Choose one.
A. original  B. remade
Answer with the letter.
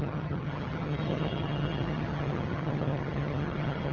B